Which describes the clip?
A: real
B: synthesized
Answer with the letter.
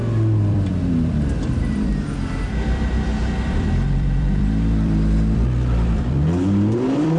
B